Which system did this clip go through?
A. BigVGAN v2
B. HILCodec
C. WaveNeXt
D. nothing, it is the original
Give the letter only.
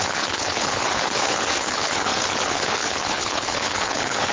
B